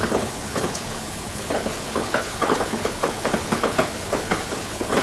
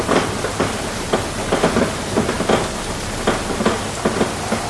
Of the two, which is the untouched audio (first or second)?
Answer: second